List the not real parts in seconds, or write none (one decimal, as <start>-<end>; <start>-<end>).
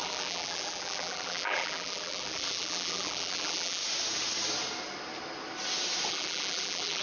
0.0-3.8; 6.1-7.0